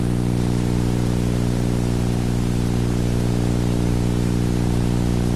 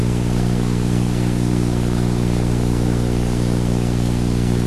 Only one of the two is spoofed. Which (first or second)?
second